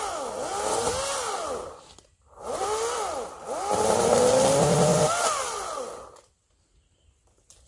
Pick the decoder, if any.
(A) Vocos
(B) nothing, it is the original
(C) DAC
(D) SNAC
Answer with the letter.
B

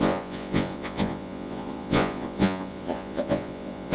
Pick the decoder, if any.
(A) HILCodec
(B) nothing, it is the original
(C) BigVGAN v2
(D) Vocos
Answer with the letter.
D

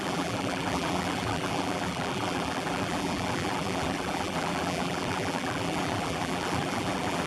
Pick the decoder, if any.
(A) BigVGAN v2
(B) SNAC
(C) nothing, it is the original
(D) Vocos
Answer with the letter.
A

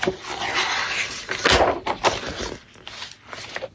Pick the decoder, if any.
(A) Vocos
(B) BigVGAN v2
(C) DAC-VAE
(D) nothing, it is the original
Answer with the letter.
D